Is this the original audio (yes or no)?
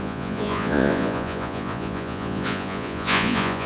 no